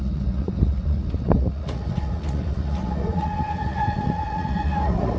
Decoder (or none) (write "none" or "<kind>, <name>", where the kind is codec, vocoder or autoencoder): vocoder, Vocos